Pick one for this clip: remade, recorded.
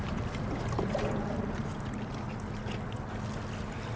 recorded